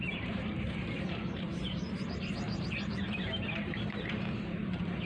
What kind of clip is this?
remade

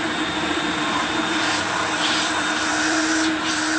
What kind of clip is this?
remade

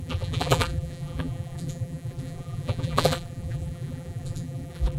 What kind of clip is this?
remade